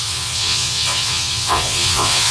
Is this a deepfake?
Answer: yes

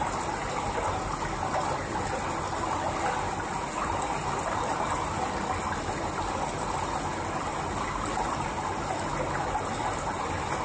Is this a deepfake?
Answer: no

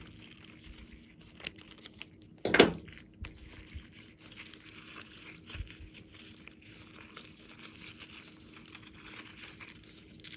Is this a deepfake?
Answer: no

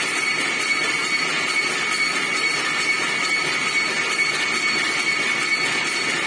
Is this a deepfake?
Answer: no